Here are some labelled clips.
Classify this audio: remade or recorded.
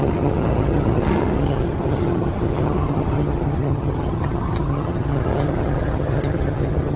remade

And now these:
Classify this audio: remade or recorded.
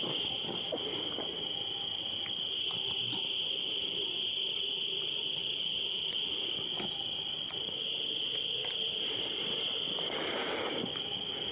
recorded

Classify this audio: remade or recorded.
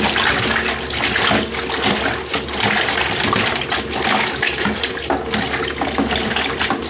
recorded